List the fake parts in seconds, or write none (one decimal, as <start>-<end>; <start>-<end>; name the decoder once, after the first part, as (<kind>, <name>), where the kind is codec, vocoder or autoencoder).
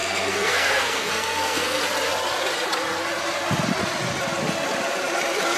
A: 0.0-1.8 (codec, SNAC)